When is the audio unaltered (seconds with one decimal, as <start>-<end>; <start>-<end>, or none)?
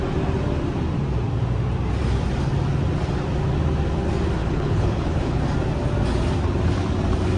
0.0-4.4; 5.4-7.4